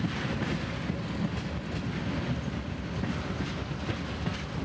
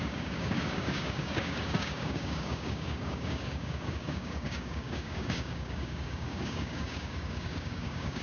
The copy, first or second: second